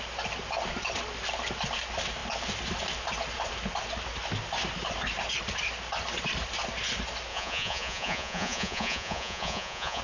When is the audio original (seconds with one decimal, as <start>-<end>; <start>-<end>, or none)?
0.0-7.3